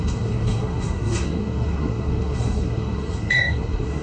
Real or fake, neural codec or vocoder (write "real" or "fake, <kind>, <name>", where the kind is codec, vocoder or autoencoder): fake, codec, SNAC